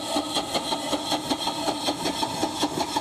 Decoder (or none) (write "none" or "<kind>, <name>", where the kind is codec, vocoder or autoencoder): none